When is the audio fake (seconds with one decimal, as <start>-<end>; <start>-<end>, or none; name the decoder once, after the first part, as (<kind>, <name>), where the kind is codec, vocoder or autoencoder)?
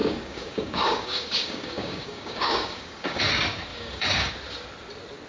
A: 0.0-3.2 (codec, DAC); 3.7-4.3